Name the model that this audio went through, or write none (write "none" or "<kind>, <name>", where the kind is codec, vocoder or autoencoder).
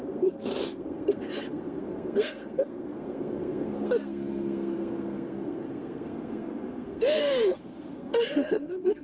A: codec, SNAC